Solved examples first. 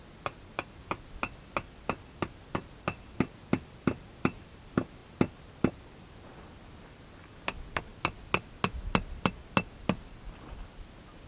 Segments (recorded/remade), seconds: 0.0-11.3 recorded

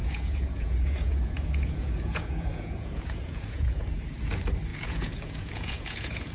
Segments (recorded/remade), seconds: 0.0-3.8 remade; 3.8-4.7 recorded; 4.7-6.3 remade

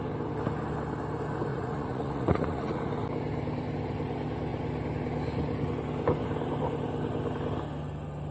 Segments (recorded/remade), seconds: 0.0-1.5 recorded; 1.5-2.8 remade; 2.8-8.3 recorded

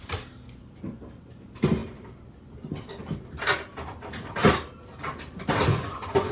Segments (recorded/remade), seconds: 0.0-5.7 recorded; 5.7-6.3 remade

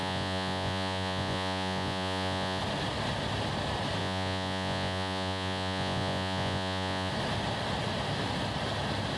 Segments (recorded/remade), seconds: 0.0-2.6 remade; 2.6-4.0 recorded; 4.0-7.1 remade; 7.1-9.2 recorded

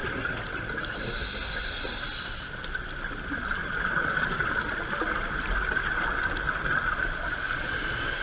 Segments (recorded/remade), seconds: 0.0-3.6 recorded; 3.6-4.5 remade; 4.5-8.2 recorded